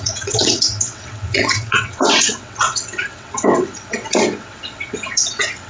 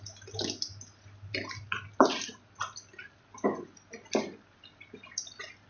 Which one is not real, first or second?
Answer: first